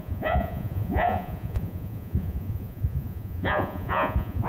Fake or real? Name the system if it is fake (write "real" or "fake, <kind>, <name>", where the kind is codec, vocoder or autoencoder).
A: fake, vocoder, Vocos